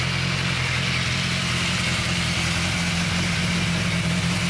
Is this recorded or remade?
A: recorded